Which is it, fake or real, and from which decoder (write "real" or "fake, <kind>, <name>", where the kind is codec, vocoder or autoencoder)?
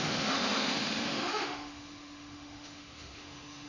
fake, autoencoder, DAC-VAE